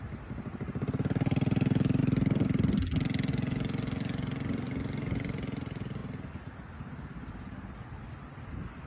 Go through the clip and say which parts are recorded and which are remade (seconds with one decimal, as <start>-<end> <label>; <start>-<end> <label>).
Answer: 0.0-8.9 recorded